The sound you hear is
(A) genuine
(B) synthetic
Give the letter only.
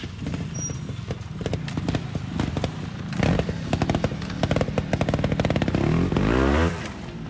A